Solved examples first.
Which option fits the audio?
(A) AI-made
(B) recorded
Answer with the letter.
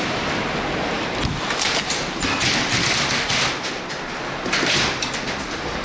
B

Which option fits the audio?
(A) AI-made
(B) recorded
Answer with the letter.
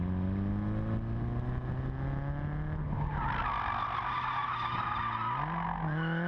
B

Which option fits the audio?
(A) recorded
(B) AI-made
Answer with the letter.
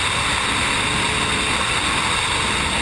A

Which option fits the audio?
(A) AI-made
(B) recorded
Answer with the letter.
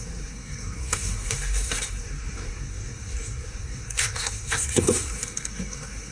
A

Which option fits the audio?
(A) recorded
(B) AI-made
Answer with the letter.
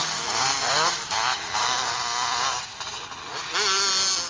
A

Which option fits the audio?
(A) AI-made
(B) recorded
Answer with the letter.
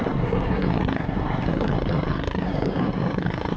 A